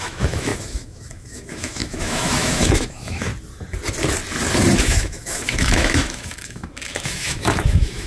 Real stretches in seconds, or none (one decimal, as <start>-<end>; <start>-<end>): 3.3-4.8